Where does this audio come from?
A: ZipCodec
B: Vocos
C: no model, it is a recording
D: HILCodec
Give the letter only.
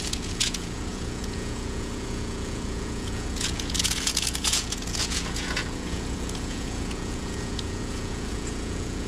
B